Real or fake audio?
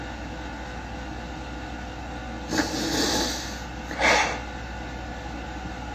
real